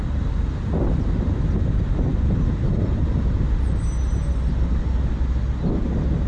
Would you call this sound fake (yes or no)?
no